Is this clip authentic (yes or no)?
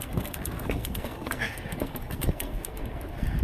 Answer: no